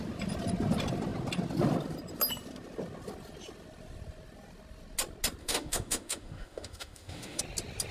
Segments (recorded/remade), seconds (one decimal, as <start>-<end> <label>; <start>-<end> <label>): 0.0-5.4 recorded; 5.4-7.4 remade; 7.4-7.9 recorded